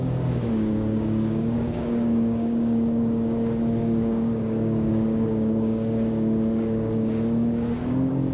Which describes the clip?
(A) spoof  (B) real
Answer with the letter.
A